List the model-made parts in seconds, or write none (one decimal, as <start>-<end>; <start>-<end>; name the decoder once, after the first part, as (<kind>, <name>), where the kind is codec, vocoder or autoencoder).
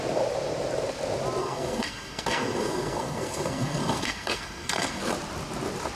1.4-5.0 (codec, SNAC)